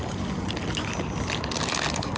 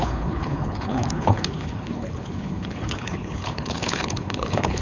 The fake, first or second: second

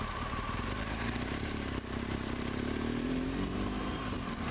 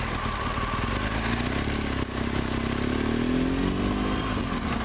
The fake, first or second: first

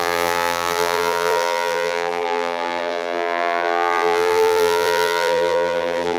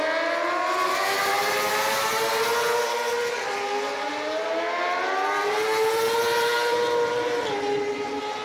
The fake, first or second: first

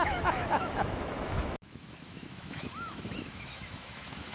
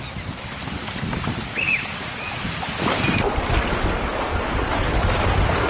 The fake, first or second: first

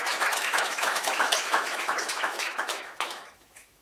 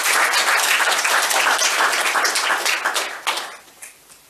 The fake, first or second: first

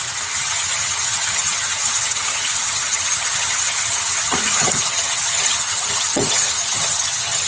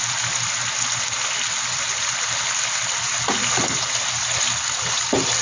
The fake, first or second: first